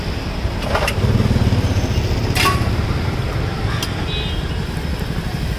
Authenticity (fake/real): real